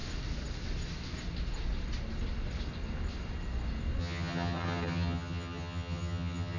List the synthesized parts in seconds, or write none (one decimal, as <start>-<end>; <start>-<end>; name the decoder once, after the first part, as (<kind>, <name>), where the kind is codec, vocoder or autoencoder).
4.0-6.6 (vocoder, HiFi-GAN)